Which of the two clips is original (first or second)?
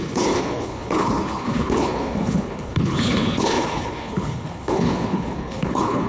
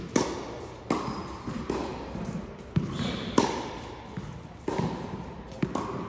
second